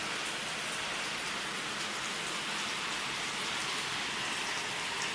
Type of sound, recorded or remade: recorded